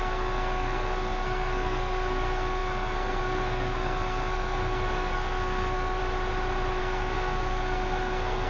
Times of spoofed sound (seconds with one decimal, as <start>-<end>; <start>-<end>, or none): 0.0-6.0; 6.8-8.5